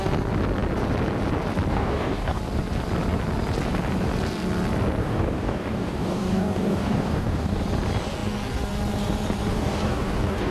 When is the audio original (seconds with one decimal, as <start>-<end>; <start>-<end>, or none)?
0.0-1.7; 2.4-5.0; 7.6-9.5

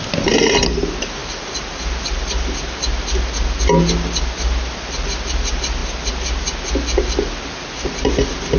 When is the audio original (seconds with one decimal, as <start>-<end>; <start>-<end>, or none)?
0.0-8.6

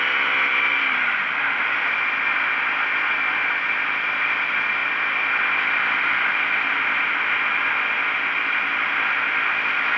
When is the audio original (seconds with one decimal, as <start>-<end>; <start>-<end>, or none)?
0.0-10.0

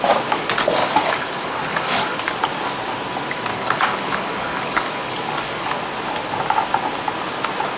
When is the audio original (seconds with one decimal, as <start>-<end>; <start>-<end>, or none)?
0.0-0.8; 2.3-3.5; 5.8-7.8